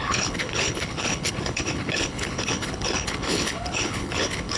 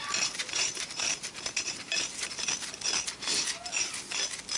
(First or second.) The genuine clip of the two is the second